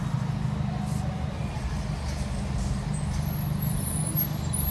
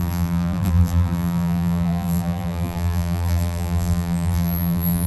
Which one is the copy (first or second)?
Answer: second